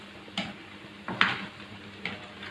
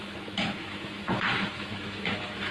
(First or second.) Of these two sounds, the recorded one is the first